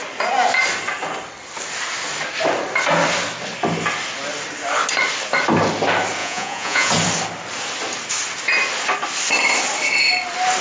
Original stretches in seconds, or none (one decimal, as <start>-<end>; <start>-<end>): 0.0-6.2; 6.9-10.6

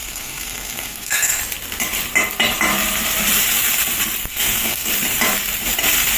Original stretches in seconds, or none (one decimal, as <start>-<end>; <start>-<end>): 1.4-4.3; 4.9-6.2